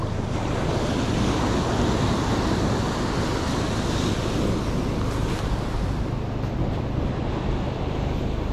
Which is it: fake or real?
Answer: real